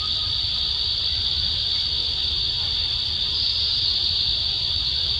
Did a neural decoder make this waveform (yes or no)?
no